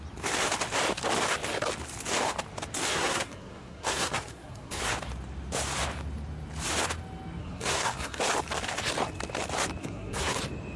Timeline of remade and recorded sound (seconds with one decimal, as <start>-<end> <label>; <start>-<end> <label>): 0.0-2.9 recorded; 2.9-4.8 remade; 4.8-7.4 recorded; 7.4-8.2 remade; 8.2-9.8 recorded; 9.8-10.4 remade; 10.4-10.8 recorded